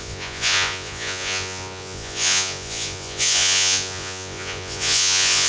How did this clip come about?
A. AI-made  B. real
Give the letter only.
A